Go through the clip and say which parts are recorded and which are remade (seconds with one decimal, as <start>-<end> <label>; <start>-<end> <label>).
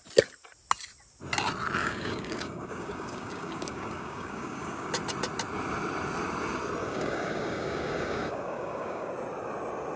0.0-1.8 recorded; 1.8-4.9 remade; 4.9-6.8 recorded; 6.8-9.1 remade; 9.1-10.0 recorded